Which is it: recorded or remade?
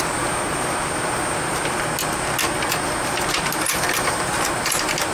recorded